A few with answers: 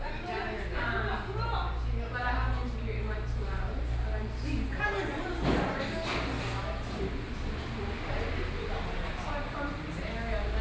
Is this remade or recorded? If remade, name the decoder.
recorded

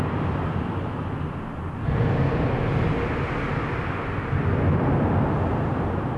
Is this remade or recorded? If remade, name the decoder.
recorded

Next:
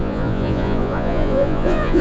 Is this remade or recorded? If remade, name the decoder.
remade, vocoder, Vocos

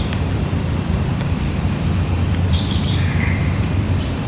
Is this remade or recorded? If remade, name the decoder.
remade, vocoder, BigVGAN v2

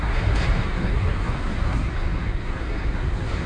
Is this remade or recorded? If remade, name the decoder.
remade, codec, SNAC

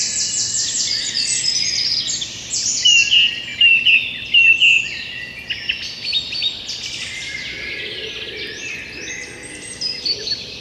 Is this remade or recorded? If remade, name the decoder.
recorded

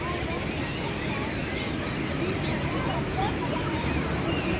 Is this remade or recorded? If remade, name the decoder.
recorded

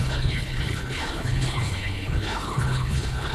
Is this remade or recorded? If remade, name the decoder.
remade, codec, HILCodec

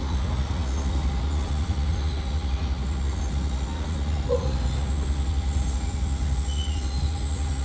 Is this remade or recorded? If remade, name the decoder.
remade, vocoder, Vocos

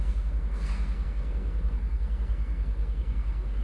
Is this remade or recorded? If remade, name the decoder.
remade, codec, SNAC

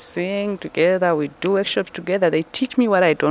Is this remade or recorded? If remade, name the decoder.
recorded